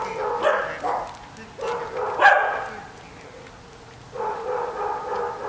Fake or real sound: real